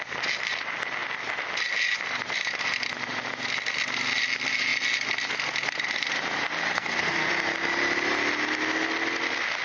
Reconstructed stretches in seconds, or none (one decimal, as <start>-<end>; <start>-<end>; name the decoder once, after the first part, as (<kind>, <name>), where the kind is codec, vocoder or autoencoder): 6.7-7.3 (codec, SNAC)